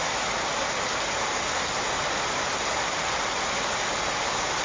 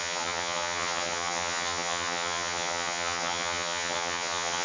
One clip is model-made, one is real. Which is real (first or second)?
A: first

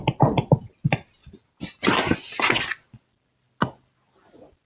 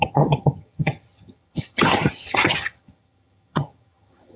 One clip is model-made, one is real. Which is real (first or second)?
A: first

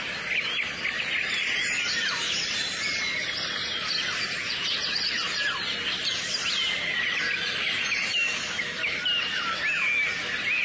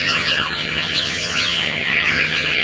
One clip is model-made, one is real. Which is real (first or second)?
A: first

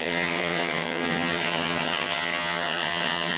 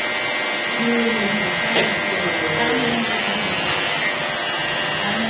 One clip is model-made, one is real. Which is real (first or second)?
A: second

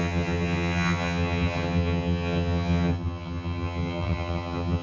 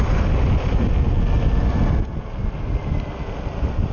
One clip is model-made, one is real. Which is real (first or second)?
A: second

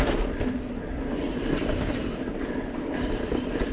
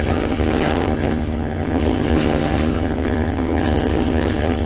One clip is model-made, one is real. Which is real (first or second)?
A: first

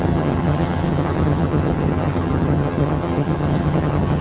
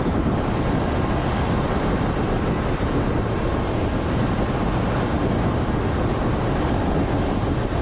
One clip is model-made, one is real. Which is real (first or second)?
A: second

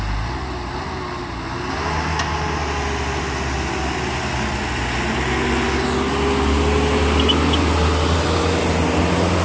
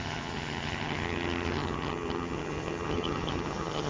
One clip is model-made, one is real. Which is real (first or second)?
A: first